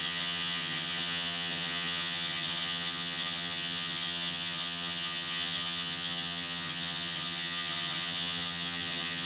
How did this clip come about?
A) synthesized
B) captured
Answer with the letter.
A